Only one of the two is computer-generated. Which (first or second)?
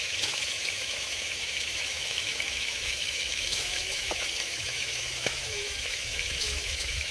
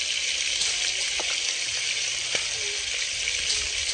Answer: first